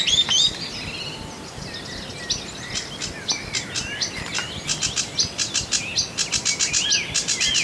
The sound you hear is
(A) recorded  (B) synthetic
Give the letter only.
A